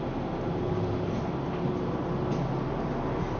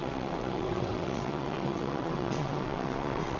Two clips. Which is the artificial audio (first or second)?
second